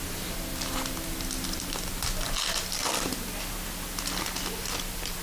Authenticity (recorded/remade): recorded